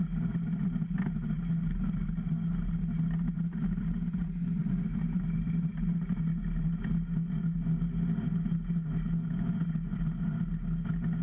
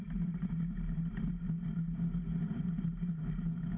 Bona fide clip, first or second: first